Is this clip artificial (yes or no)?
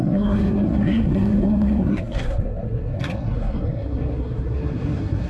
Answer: yes